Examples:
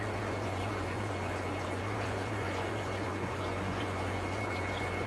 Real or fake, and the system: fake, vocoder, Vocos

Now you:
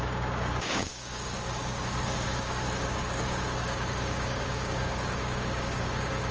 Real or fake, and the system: fake, codec, DAC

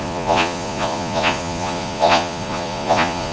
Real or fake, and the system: fake, vocoder, Vocos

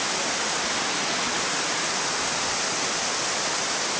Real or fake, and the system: real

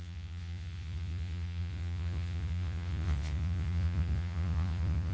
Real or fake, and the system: fake, vocoder, Vocos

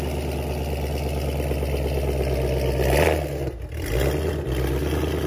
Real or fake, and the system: real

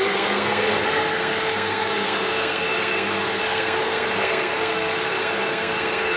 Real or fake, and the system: fake, codec, SNAC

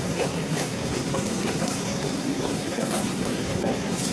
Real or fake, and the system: fake, codec, SNAC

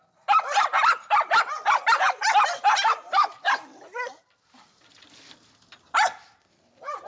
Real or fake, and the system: real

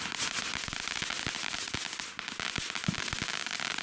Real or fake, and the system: real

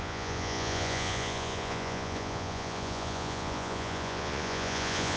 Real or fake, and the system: fake, vocoder, Vocos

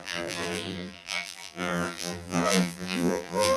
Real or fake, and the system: fake, vocoder, BigVGAN v2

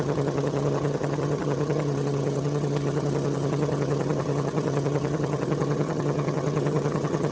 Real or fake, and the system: fake, vocoder, HiFi-GAN